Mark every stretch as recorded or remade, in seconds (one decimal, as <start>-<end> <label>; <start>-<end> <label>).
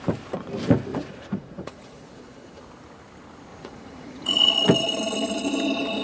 0.0-0.9 recorded; 0.9-2.6 remade; 2.6-3.5 recorded; 3.5-4.5 remade; 4.5-6.0 recorded